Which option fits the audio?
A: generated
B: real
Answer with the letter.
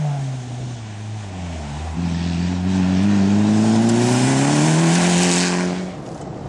B